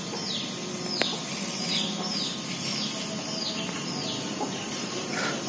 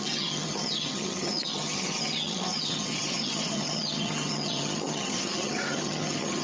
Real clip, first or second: first